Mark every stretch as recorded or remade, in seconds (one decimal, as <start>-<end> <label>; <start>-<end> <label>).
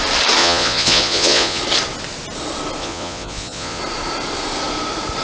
0.0-0.4 recorded; 0.4-1.6 remade; 1.6-2.8 recorded; 2.8-3.8 remade; 3.8-5.2 recorded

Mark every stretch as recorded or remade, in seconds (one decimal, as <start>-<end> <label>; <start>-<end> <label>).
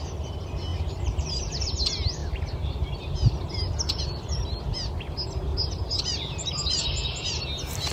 0.0-0.7 recorded; 0.7-1.3 remade; 1.3-5.5 recorded; 5.5-7.4 remade; 7.4-7.9 recorded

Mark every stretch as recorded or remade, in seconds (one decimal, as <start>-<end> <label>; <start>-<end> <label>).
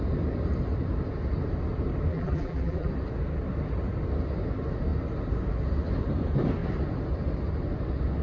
0.0-2.1 recorded; 2.1-2.9 remade; 2.9-8.2 recorded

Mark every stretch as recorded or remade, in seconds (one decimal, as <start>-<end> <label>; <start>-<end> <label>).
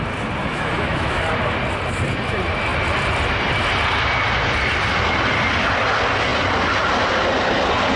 0.0-0.4 recorded; 0.4-1.2 remade; 1.2-8.0 recorded